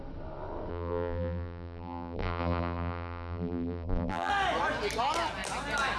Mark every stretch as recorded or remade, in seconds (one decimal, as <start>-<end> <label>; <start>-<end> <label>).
0.0-0.7 recorded; 0.7-4.3 remade; 4.3-6.0 recorded